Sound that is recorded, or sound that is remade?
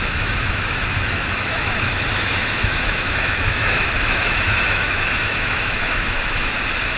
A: remade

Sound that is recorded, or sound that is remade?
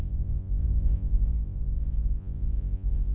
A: remade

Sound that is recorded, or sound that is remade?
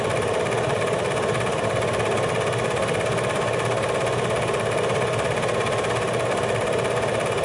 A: recorded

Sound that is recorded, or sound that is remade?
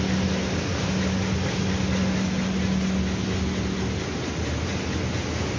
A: recorded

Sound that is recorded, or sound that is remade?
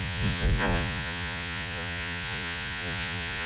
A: remade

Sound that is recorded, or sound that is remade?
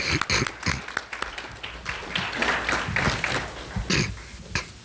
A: recorded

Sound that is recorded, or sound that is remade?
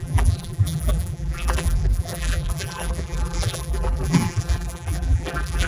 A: remade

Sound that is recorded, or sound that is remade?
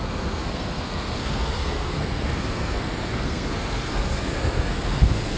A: remade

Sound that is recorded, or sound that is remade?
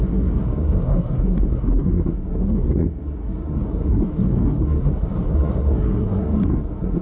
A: remade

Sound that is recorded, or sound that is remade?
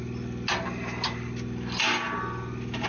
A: recorded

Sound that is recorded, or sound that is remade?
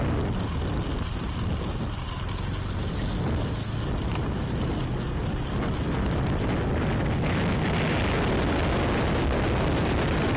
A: recorded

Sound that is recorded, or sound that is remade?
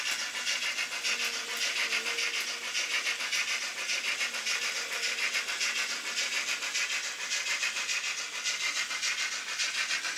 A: recorded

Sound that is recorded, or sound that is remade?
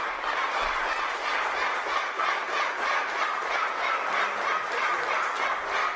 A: recorded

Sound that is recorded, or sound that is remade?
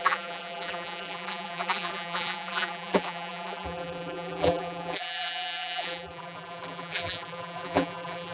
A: remade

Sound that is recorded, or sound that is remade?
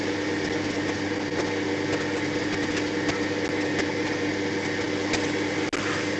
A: recorded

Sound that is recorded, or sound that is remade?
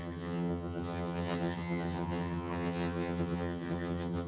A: remade